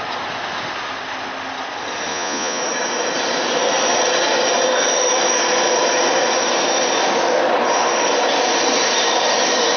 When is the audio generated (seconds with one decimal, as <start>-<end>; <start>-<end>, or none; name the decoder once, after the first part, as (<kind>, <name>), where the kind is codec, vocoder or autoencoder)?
2.1-2.6 (vocoder, Vocos)